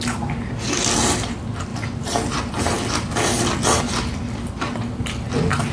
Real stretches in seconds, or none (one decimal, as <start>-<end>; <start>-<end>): 0.0-5.7